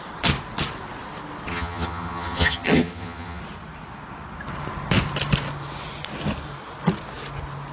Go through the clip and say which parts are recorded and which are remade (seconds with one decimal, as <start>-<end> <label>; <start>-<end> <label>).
0.0-1.5 recorded; 1.5-3.4 remade; 3.4-7.7 recorded